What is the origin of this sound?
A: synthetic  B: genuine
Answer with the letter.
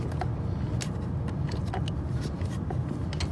B